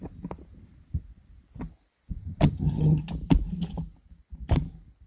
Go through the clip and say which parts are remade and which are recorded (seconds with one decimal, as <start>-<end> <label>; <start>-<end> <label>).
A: 0.0-2.2 recorded; 2.2-3.0 remade; 3.0-5.1 recorded